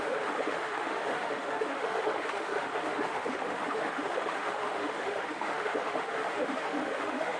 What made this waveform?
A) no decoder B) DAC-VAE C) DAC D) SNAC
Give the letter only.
B